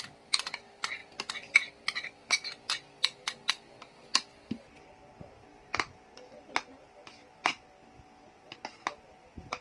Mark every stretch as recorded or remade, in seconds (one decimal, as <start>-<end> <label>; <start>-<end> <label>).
0.0-5.5 recorded; 5.5-6.9 remade; 6.9-9.6 recorded